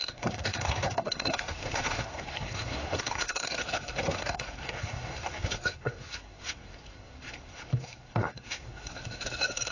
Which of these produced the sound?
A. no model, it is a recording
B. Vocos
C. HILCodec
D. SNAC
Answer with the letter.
D